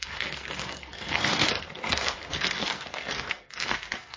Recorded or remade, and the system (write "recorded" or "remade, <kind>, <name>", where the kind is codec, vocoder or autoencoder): remade, codec, SNAC